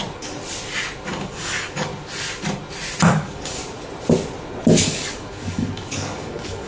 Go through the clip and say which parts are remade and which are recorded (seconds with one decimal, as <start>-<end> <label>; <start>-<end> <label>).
0.0-1.1 recorded; 1.1-1.9 remade; 1.9-3.1 recorded; 3.1-3.6 remade; 3.6-4.7 recorded; 4.7-6.7 remade